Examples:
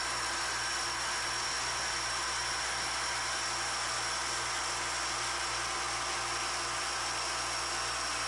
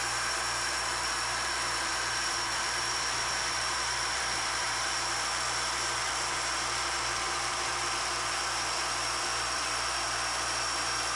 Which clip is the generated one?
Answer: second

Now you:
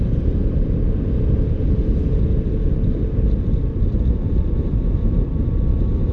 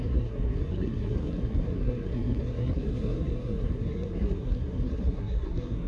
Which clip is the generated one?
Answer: second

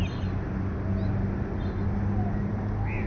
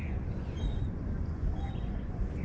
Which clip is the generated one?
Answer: second